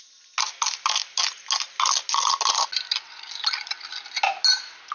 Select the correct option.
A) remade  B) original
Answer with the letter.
B